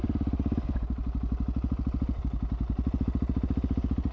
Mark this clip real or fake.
real